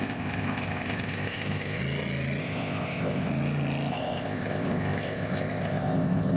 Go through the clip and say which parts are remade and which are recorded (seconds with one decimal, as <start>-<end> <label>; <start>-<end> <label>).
0.0-1.8 remade; 1.8-2.4 recorded; 2.4-3.3 remade; 3.3-3.9 recorded; 3.9-6.4 remade